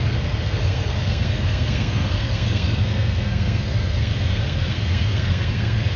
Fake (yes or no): yes